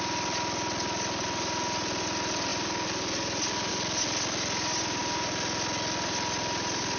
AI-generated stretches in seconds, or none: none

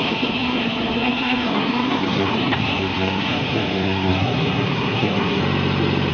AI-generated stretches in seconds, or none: 0.0-5.4 (codec, SNAC)